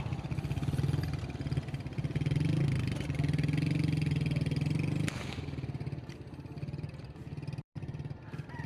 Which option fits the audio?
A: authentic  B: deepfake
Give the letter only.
A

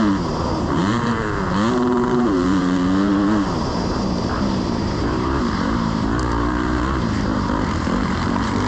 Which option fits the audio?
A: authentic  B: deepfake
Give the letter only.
B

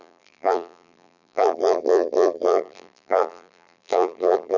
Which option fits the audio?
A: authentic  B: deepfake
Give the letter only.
B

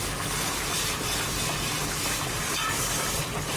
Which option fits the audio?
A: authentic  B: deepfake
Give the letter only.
A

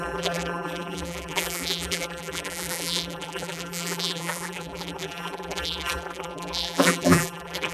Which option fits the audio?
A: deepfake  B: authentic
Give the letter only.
A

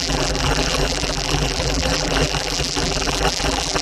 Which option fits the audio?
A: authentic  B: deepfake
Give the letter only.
B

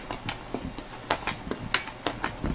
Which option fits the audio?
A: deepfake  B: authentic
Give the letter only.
B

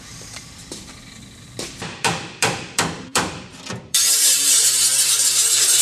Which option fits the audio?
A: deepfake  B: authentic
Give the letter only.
A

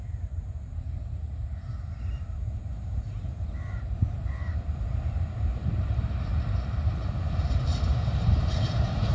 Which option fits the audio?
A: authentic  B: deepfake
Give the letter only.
B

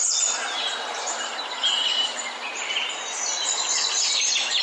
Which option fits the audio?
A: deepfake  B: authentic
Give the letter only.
A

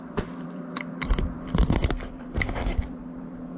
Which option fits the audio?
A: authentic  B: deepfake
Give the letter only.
B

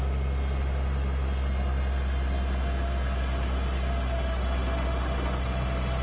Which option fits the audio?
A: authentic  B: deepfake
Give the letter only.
A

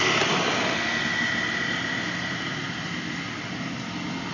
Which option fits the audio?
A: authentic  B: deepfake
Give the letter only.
A